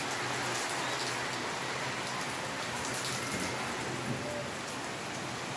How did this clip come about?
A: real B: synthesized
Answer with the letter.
A